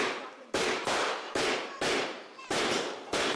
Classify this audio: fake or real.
fake